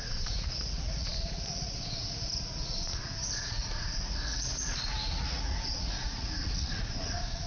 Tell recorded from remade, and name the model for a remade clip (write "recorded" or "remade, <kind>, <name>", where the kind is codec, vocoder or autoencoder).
remade, vocoder, Vocos